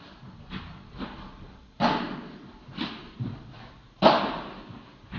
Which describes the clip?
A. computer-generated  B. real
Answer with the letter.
B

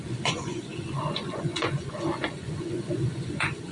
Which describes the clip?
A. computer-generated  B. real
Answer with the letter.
A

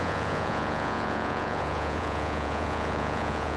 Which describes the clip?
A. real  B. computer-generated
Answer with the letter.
B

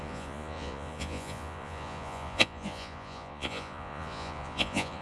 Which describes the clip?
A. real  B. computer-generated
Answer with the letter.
B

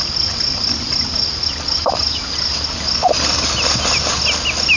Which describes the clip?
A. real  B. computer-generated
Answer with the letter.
A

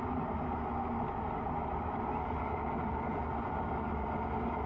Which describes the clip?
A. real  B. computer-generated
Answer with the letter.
A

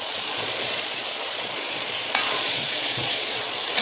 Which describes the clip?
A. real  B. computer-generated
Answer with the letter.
B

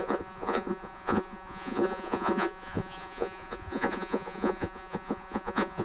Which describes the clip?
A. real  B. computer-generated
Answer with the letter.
B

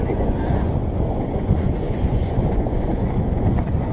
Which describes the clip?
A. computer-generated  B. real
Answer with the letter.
A